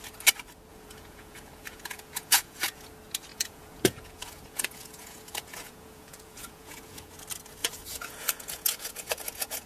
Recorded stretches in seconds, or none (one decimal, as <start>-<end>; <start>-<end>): 0.0-0.7; 2.9-3.3; 7.1-7.6